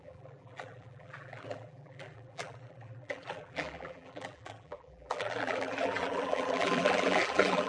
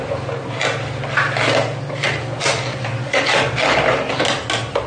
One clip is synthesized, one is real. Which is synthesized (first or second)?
first